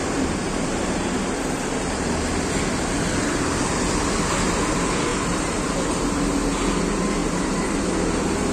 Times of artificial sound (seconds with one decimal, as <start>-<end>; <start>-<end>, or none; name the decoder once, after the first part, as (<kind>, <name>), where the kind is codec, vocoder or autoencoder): 0.0-2.2 (vocoder, BigVGAN v2); 5.1-5.7; 7.2-7.8